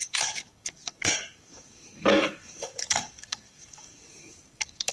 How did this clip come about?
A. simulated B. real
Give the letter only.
A